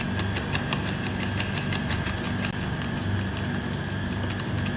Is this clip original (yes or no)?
yes